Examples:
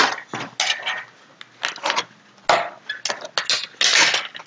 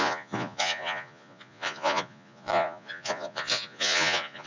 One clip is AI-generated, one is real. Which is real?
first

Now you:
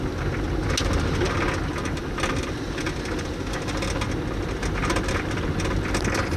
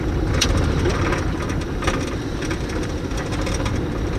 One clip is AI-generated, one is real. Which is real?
first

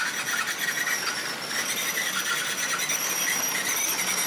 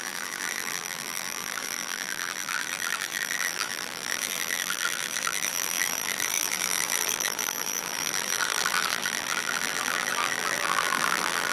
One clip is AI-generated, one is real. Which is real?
first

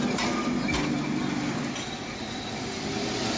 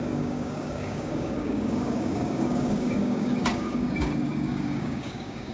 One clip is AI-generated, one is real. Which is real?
first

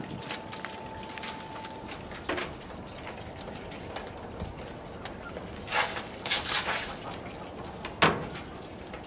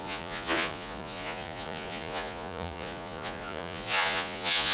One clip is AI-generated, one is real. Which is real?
first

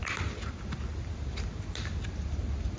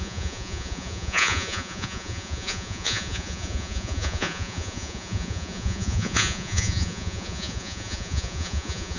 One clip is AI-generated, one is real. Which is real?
first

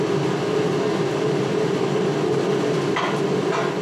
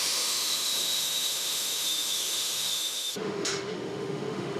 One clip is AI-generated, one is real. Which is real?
first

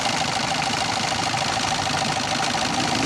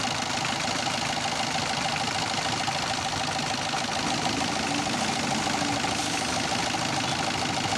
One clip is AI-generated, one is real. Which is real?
second